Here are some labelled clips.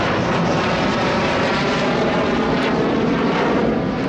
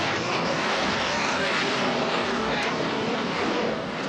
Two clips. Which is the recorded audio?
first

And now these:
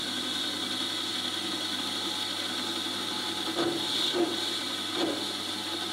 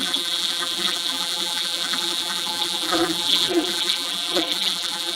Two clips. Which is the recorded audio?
first